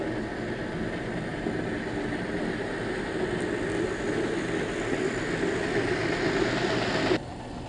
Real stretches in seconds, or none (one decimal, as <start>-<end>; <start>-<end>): 0.0-7.7